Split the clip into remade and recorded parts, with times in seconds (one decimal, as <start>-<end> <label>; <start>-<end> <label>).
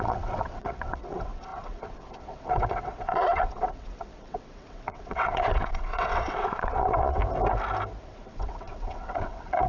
0.0-7.2 remade; 7.2-8.0 recorded; 8.0-9.7 remade